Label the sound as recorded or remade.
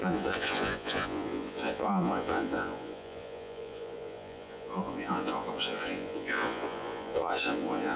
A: remade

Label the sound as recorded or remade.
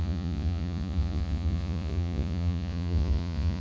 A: remade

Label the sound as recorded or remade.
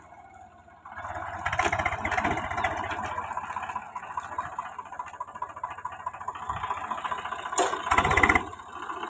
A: recorded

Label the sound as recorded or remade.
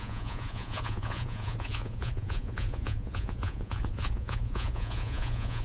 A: remade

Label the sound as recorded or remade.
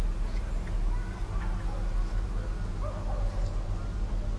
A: recorded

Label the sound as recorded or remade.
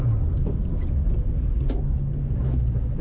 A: recorded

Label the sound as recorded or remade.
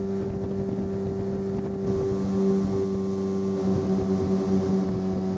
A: recorded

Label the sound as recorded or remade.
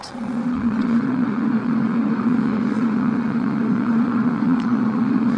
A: remade